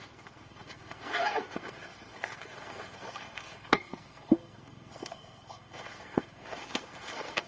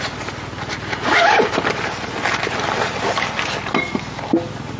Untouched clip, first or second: second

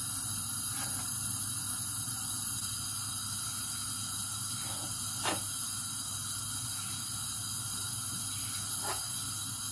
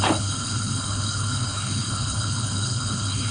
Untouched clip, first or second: first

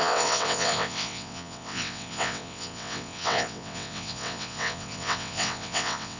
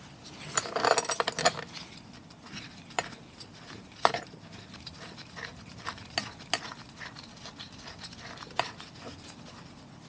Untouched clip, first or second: second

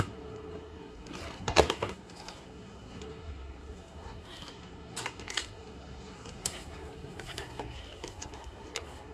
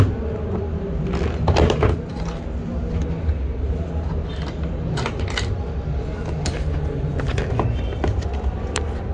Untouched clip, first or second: second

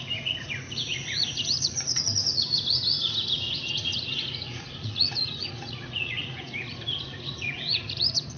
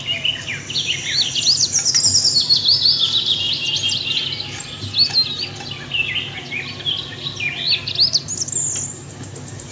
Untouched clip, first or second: second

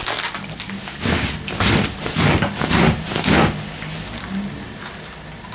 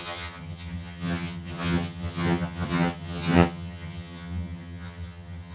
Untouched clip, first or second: first